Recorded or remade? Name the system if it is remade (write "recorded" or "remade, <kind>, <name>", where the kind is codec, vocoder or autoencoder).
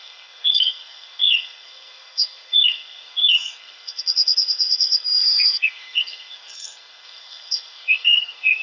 remade, codec, SNAC